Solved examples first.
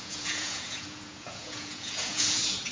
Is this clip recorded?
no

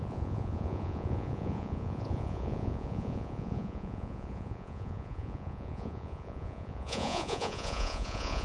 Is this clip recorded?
no